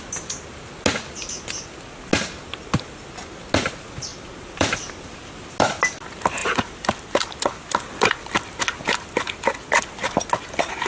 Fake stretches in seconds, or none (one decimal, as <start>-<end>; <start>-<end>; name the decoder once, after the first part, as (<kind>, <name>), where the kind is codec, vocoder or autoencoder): 4.1-5.3 (vocoder, BigVGAN v2); 6.4-8.6

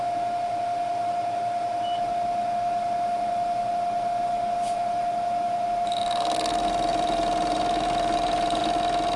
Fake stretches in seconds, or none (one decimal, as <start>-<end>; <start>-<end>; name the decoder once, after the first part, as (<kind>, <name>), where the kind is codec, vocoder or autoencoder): 6.9-8.6 (vocoder, BigVGAN v2)

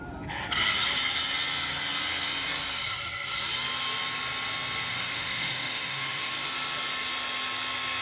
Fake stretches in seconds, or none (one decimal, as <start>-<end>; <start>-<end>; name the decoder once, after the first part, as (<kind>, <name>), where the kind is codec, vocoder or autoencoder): 4.9-6.3 (autoencoder, DAC-VAE)

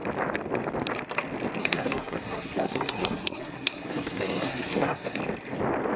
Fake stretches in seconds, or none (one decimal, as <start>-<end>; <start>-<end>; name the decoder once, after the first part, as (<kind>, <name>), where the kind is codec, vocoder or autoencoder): 1.6-5.2 (codec, SNAC)

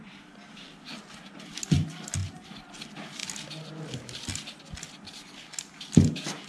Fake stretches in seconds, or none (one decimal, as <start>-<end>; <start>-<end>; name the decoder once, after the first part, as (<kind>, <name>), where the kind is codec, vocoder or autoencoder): 0.0-3.2 (vocoder, BigVGAN v2); 5.8-6.5

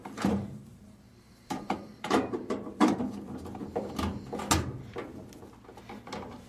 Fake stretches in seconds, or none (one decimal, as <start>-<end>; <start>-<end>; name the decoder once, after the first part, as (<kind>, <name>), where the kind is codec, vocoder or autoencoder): 0.0-3.0 (vocoder, BigVGAN v2)

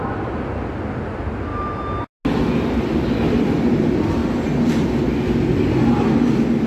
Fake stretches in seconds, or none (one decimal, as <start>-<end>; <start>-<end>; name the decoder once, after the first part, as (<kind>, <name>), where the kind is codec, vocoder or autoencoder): none

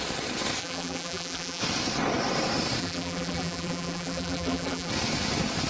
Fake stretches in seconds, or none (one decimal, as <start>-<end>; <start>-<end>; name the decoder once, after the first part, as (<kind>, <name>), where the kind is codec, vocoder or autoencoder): 0.6-1.6 (vocoder, BigVGAN v2); 2.8-4.9